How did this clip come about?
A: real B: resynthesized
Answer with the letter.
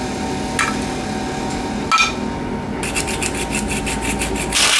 A